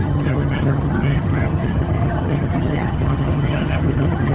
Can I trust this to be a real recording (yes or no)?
no